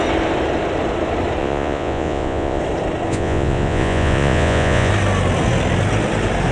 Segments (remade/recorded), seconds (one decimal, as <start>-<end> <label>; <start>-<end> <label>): 0.0-1.4 recorded; 1.4-2.6 remade; 2.6-3.1 recorded; 3.1-4.9 remade; 4.9-6.5 recorded